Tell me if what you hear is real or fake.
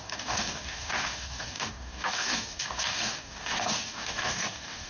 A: fake